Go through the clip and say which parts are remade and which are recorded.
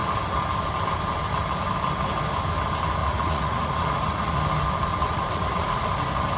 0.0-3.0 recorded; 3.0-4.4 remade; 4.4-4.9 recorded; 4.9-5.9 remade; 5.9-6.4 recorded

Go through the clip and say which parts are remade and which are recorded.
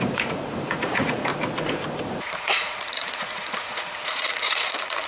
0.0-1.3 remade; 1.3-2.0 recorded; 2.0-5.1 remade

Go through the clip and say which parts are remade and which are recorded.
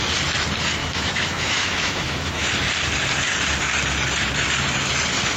0.0-0.8 recorded; 0.8-2.5 remade; 2.5-5.4 recorded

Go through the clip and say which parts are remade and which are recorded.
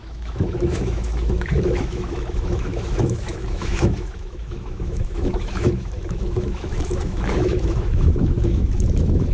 0.0-9.3 remade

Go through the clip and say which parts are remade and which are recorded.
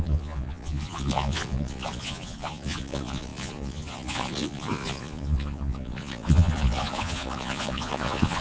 0.0-8.4 remade